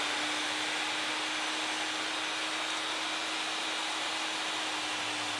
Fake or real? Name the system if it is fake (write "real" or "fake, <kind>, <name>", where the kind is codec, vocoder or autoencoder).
real